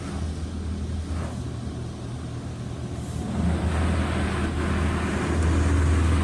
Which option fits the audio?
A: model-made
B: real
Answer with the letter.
B